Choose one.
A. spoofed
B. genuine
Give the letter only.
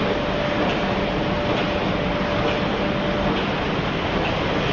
B